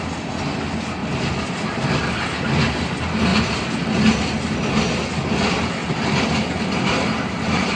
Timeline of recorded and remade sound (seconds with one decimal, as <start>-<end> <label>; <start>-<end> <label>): 0.0-1.0 recorded; 1.0-2.1 remade; 2.1-5.8 recorded; 5.8-7.8 remade